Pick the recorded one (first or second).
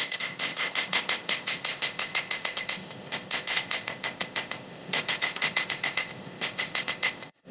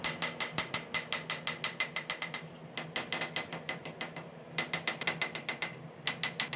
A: second